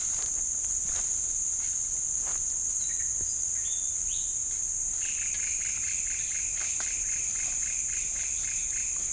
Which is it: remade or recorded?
recorded